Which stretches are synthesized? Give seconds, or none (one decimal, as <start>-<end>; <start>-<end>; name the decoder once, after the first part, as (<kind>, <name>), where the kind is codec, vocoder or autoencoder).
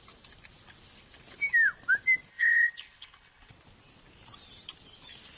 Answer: 2.3-3.5 (codec, HILCodec)